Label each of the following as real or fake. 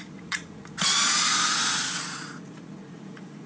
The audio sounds fake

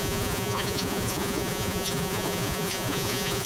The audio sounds fake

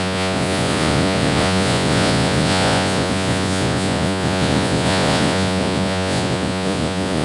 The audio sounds fake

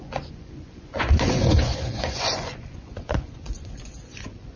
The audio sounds fake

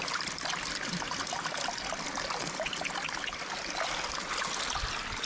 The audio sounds real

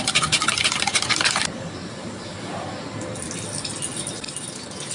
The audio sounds real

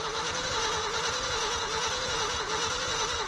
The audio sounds fake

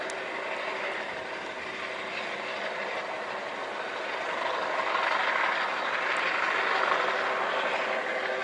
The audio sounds real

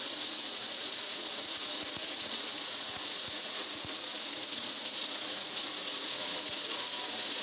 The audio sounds fake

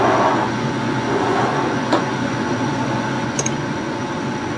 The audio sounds fake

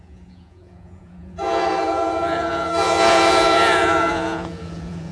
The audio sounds fake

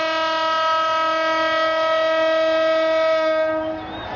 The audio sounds real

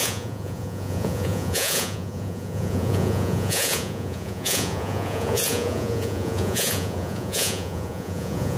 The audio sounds fake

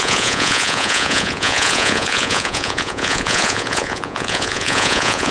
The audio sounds fake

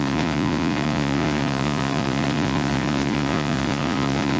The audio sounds fake